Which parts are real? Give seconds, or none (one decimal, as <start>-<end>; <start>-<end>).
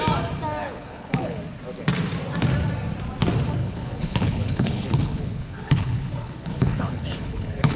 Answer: 0.0-0.6; 1.4-3.6